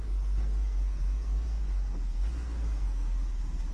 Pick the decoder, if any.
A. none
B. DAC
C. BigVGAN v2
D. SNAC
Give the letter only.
D